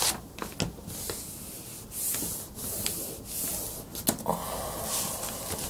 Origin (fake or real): real